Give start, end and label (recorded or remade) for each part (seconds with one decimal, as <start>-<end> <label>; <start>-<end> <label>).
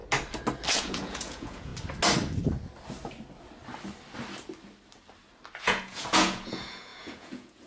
0.0-0.7 recorded; 0.7-1.7 remade; 1.7-5.6 recorded; 5.6-7.7 remade